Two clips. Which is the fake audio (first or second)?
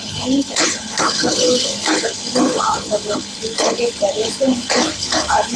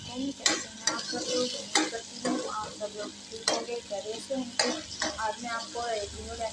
first